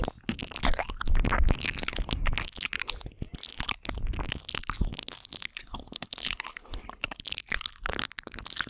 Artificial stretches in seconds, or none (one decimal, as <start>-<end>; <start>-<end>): 5.5-7.2